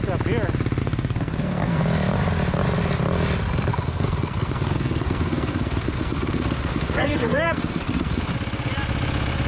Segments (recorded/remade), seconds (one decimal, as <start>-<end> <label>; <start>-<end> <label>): 0.0-0.8 recorded; 0.8-1.8 remade; 1.8-3.7 recorded; 3.7-8.2 remade; 8.2-9.5 recorded